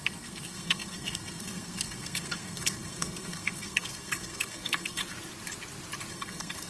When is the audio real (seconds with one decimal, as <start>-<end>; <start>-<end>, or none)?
5.0-6.1